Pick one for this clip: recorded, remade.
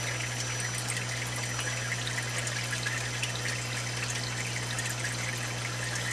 recorded